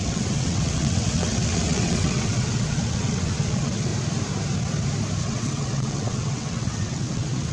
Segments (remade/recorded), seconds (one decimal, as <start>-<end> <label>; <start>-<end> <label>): 0.0-3.9 remade; 3.9-5.2 recorded; 5.2-7.5 remade